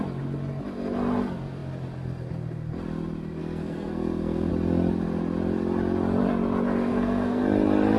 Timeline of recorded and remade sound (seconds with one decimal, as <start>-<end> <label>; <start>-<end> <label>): 0.0-3.4 recorded; 3.4-4.5 remade; 4.5-6.9 recorded; 6.9-7.4 remade; 7.4-8.0 recorded